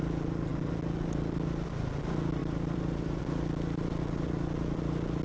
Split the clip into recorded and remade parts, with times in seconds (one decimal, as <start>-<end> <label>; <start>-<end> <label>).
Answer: 0.0-2.4 recorded; 2.4-3.2 remade; 3.2-5.2 recorded